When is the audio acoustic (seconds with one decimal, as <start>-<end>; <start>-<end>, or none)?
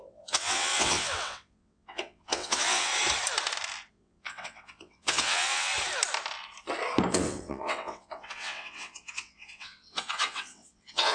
2.9-3.9; 5.7-7.1